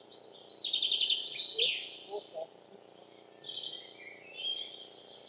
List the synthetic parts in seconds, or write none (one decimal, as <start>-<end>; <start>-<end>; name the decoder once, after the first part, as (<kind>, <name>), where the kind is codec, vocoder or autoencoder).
none

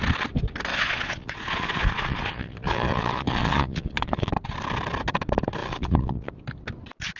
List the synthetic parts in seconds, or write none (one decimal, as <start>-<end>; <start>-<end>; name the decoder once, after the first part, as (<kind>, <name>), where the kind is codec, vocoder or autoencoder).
0.7-4.3 (vocoder, Vocos); 5.6-6.3

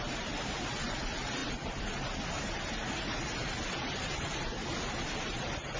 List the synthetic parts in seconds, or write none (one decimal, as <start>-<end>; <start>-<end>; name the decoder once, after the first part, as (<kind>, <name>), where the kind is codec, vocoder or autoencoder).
none

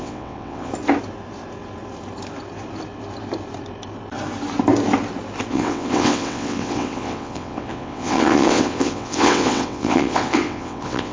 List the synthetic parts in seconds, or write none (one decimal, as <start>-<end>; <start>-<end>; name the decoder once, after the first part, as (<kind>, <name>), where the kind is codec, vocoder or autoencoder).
0.0-0.7 (vocoder, WaveNeXt); 5.5-11.1

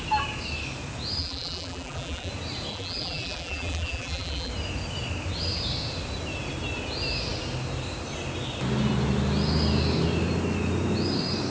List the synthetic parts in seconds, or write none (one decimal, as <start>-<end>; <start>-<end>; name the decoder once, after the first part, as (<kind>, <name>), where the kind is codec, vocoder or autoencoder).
1.2-2.3 (vocoder, BigVGAN v2); 2.7-4.5

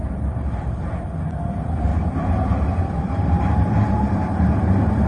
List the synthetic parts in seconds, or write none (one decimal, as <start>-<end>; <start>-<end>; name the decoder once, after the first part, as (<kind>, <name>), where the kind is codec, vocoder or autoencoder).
0.0-1.1 (vocoder, BigVGAN v2); 1.9-5.1

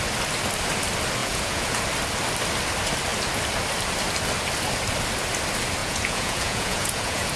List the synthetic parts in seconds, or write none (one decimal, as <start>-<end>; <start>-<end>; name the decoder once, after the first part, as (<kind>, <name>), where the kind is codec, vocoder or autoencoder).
1.2-1.8 (vocoder, Vocos); 5.8-7.4

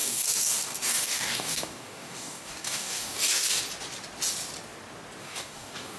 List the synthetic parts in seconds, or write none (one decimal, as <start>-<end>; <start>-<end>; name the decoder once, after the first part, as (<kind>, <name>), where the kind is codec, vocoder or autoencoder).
0.0-3.6 (codec, DAC); 5.2-6.0